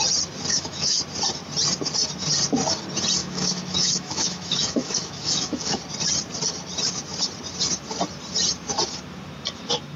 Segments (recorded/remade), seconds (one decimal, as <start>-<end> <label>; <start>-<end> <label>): 0.0-0.5 recorded; 0.5-1.0 remade; 1.0-3.2 recorded; 3.2-5.8 remade; 5.8-10.0 recorded